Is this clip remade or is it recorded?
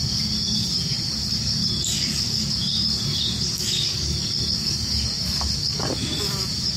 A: remade